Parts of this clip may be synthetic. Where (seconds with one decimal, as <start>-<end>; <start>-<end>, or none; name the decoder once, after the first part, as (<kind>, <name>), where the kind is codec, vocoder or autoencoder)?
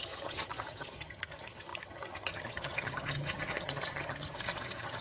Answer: 0.0-5.0 (vocoder, HiFi-GAN)